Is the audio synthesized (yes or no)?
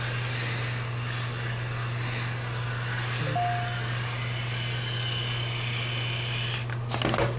no